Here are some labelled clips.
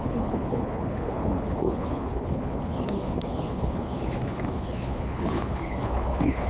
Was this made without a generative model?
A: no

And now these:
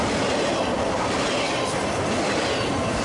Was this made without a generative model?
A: yes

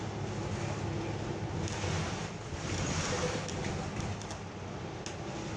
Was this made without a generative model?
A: yes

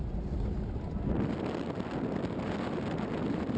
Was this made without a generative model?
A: yes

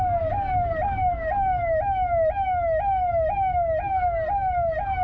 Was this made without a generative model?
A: yes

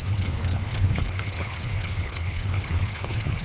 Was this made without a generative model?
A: no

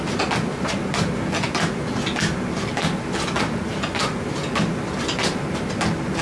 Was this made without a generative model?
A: yes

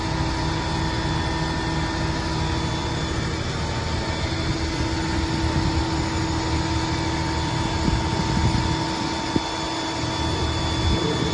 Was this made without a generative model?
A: yes